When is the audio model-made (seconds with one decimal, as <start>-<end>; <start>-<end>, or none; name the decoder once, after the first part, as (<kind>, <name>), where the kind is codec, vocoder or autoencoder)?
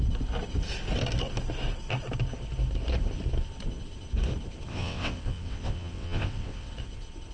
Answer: 4.7-6.7 (vocoder, WaveNeXt)